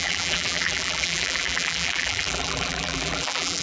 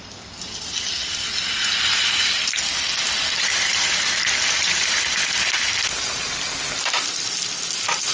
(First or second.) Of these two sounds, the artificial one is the first